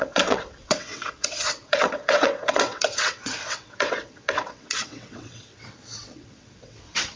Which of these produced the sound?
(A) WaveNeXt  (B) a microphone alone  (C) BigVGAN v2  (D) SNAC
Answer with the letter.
A